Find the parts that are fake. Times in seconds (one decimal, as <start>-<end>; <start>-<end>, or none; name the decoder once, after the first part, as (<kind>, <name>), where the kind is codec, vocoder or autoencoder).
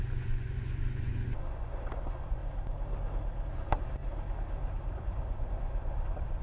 0.0-2.4 (vocoder, Vocos); 3.5-4.0; 4.9-6.4